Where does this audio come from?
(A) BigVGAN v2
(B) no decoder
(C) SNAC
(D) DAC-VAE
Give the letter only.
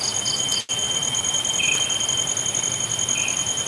B